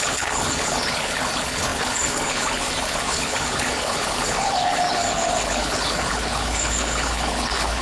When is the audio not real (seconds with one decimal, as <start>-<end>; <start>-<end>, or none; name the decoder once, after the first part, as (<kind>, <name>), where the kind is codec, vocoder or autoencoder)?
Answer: 0.0-7.8 (codec, HILCodec)